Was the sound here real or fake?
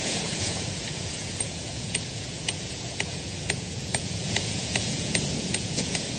fake